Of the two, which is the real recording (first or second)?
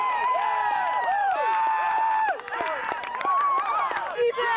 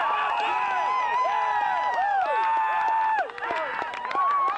second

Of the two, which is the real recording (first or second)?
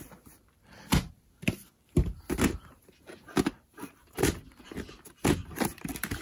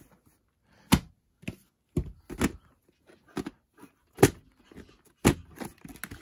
second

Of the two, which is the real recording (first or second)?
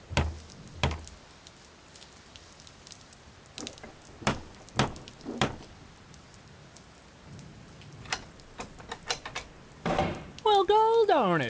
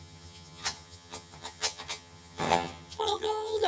first